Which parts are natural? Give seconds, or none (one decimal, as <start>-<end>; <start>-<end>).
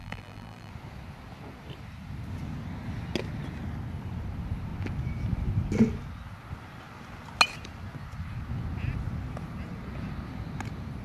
0.7-11.0